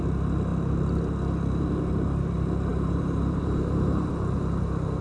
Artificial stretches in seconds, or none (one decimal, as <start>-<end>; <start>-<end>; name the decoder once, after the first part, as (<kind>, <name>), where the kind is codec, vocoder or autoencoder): 2.7-4.1 (vocoder, BigVGAN v2)